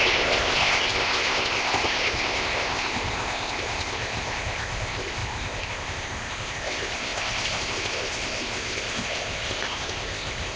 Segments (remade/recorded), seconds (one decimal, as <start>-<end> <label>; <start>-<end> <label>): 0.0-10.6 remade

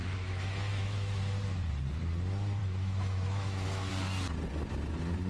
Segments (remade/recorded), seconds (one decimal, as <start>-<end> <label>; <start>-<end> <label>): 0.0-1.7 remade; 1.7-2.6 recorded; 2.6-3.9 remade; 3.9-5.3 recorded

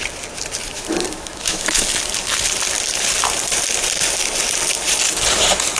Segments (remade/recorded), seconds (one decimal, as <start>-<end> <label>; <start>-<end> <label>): 0.0-0.7 recorded; 0.7-1.8 remade; 1.8-5.8 recorded

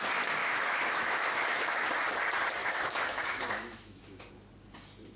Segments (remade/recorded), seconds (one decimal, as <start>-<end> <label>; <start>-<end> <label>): 0.0-0.4 recorded; 0.4-1.9 remade; 1.9-2.6 recorded; 2.6-4.3 remade; 4.3-5.2 recorded